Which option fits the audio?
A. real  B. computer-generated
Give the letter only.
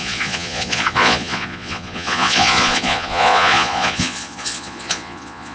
B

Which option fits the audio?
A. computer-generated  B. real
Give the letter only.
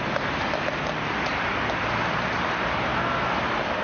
B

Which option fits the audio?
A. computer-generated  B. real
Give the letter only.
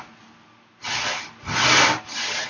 B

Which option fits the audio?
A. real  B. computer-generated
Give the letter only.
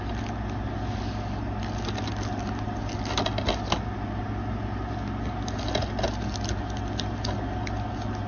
A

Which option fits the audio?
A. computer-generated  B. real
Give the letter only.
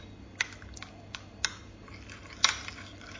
B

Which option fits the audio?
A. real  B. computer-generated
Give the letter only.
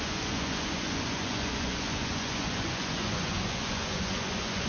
B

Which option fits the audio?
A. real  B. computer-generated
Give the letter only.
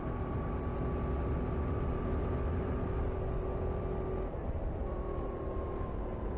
A